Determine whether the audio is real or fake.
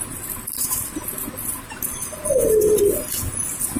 real